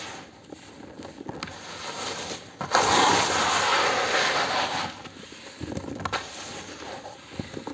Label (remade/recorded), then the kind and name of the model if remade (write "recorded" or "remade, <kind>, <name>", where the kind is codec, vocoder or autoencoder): recorded